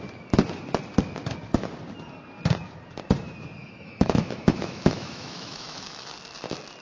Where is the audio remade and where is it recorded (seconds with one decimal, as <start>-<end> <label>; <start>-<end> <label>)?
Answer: 0.0-3.6 recorded; 3.6-6.1 remade; 6.1-6.8 recorded